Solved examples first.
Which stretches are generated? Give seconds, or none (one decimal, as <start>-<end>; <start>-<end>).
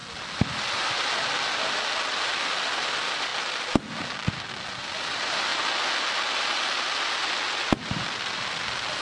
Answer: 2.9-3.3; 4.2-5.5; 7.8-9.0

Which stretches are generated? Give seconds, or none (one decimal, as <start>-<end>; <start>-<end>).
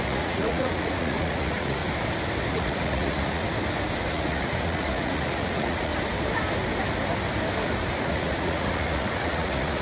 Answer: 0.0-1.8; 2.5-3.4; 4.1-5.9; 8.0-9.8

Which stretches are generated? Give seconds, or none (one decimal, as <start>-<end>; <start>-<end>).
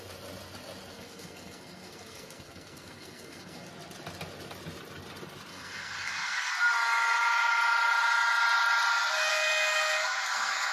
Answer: 0.9-3.7; 5.5-6.5; 9.3-10.7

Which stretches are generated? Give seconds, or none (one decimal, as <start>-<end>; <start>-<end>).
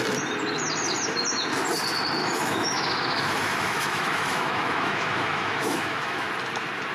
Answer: 2.2-6.3